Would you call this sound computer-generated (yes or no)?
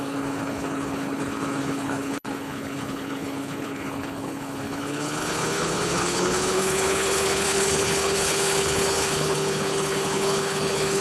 yes